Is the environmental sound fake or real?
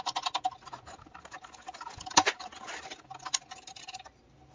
real